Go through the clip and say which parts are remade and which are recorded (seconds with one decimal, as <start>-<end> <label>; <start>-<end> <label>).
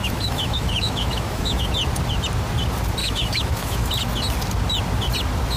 0.0-1.7 remade; 1.7-3.0 recorded; 3.0-3.9 remade; 3.9-5.6 recorded